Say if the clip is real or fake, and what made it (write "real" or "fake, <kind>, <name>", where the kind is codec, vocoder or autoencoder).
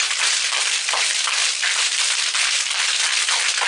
real